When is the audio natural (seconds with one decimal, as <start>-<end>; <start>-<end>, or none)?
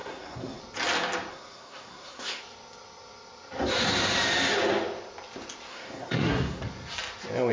0.6-1.3; 2.4-5.7; 6.6-7.5